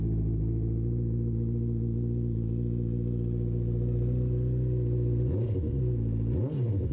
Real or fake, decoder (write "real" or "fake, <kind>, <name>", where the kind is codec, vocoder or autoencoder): real